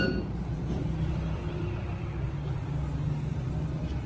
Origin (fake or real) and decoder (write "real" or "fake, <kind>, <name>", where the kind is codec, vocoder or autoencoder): real